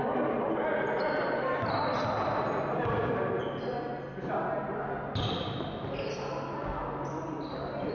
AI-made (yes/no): no